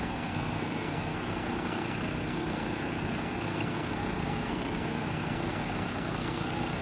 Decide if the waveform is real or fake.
fake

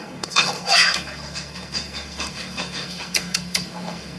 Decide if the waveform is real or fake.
fake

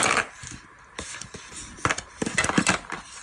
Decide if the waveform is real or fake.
real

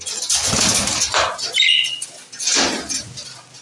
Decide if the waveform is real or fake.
real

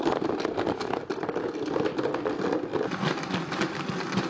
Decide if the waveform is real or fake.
real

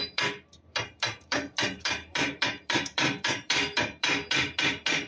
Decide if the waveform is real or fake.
fake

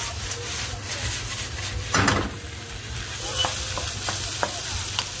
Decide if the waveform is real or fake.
real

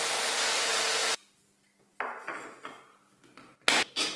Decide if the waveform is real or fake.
real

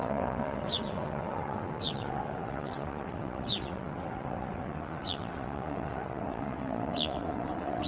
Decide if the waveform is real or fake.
fake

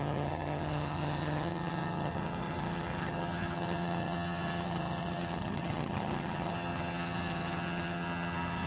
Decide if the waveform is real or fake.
fake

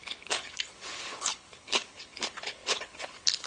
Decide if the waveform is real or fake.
fake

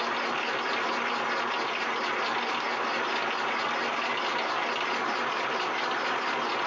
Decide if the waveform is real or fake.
real